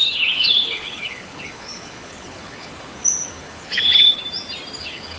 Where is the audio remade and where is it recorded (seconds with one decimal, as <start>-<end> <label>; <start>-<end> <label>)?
0.0-2.7 remade; 2.7-3.3 recorded; 3.3-4.2 remade; 4.2-4.8 recorded; 4.8-5.2 remade